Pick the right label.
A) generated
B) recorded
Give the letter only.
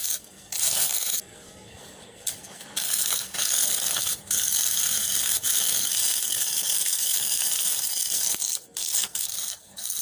A